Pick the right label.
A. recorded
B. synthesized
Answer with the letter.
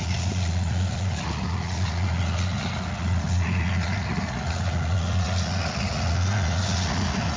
B